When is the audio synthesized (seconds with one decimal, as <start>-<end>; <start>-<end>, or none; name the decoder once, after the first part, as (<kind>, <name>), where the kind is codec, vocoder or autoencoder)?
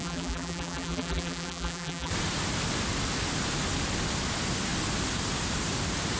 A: 0.0-2.1 (vocoder, BigVGAN v2)